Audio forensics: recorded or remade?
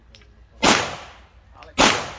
recorded